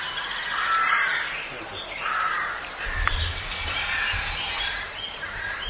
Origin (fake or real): fake